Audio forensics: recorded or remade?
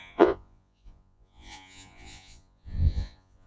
remade